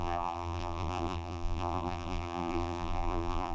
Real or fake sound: fake